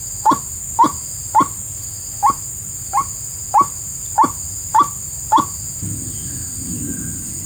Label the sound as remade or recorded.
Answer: recorded